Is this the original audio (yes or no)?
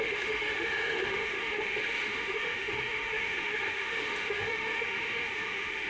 no